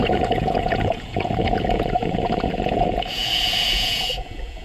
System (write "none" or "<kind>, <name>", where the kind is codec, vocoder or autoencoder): vocoder, Vocos